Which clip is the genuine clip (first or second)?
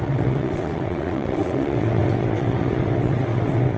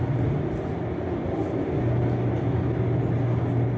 second